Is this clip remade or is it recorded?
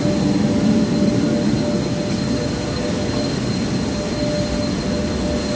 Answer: recorded